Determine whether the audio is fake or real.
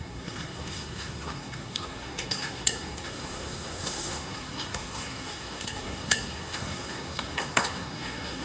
fake